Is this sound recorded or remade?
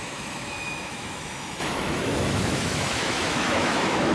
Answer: remade